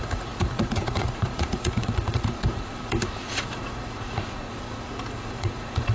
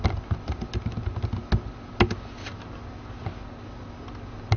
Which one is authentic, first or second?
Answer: second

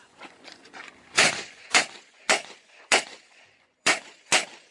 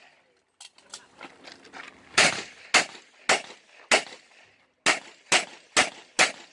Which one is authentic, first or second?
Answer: second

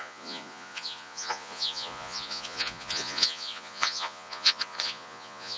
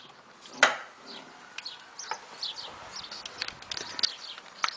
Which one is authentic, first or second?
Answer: second